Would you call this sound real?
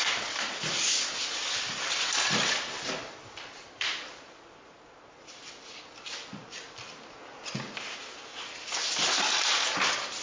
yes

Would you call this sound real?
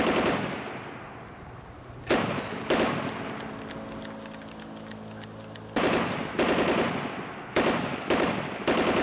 yes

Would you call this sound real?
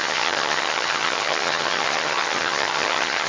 no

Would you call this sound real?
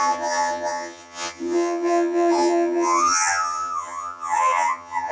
no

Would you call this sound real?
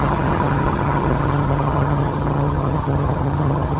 no